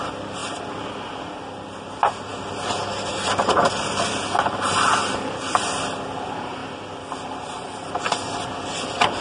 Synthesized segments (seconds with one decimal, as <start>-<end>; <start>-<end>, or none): 6.6-7.9